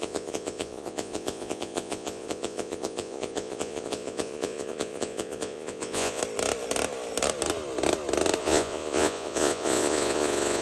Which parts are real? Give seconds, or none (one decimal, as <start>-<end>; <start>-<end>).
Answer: 6.2-8.4